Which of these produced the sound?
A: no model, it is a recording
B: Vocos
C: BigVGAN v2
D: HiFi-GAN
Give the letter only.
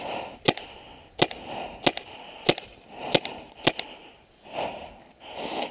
A